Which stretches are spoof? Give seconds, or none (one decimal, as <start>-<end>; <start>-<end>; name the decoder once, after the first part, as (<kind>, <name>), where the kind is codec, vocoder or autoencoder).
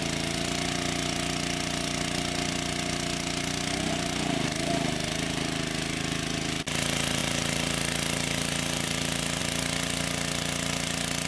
none